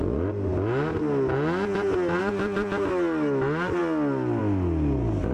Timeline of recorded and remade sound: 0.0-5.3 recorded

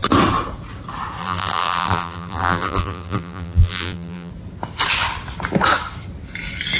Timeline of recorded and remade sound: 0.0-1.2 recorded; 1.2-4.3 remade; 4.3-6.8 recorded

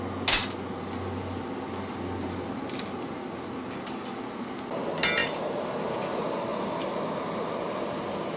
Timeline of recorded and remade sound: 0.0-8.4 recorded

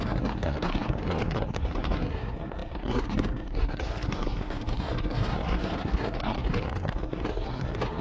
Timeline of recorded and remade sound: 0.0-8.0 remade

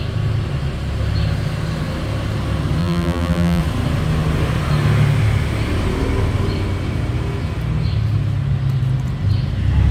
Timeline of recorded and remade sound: 0.0-2.8 recorded; 2.8-3.6 remade; 3.6-9.9 recorded

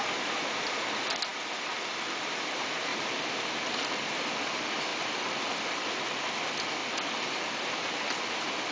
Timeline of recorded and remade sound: 0.0-1.3 recorded; 1.3-1.9 remade; 1.9-2.9 recorded; 2.9-3.9 remade; 3.9-4.9 recorded; 4.9-5.4 remade; 5.4-8.7 recorded

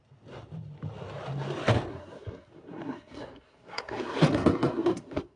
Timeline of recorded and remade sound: 0.0-1.9 recorded; 1.9-5.4 remade

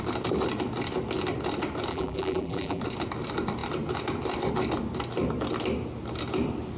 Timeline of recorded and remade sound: 0.0-1.9 recorded; 1.9-2.8 remade; 2.8-6.8 recorded